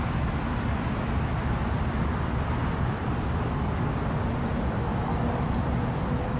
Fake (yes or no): yes